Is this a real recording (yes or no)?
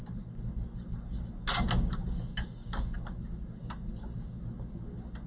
yes